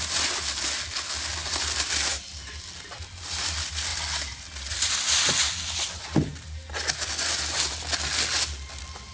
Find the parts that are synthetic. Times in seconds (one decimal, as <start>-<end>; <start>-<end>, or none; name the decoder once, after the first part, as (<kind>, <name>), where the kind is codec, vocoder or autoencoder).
none